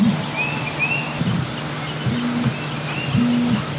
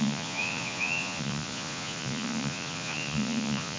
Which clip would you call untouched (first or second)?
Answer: first